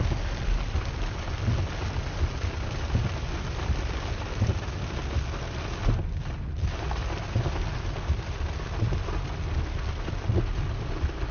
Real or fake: real